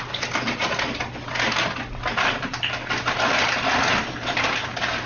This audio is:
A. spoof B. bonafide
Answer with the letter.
B